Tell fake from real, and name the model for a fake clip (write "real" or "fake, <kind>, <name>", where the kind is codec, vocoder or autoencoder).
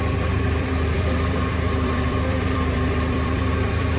fake, vocoder, BigVGAN v2